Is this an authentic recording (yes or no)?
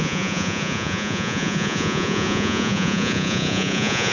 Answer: no